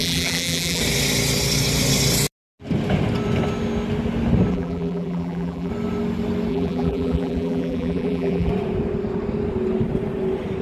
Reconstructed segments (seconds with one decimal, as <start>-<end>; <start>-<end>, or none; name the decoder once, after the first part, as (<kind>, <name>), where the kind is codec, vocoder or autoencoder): 0.0-0.8 (vocoder, BigVGAN v2); 4.5-5.7; 6.5-8.5